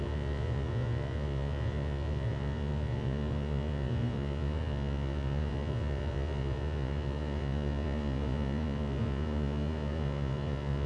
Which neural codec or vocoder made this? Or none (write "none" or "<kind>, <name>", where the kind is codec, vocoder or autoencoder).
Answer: vocoder, Vocos